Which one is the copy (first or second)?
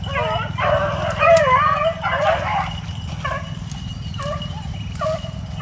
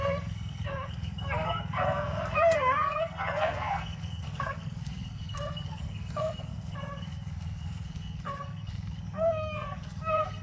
second